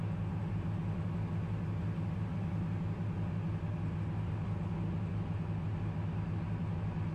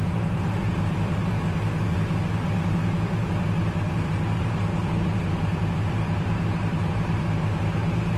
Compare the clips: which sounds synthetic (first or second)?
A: second